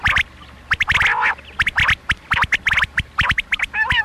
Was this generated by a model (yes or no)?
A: no